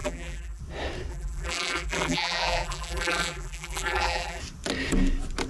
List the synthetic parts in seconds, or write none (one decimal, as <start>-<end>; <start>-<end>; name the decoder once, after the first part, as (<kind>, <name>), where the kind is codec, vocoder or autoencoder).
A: 0.0-0.6 (vocoder, BigVGAN v2); 1.1-4.4